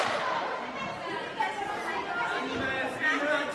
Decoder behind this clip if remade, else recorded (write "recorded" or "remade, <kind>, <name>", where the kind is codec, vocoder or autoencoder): remade, vocoder, BigVGAN v2